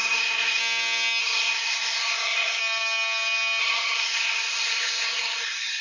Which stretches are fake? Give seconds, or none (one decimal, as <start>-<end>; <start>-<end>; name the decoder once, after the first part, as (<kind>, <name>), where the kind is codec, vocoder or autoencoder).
0.0-0.6 (codec, SNAC); 1.2-2.6; 3.6-5.8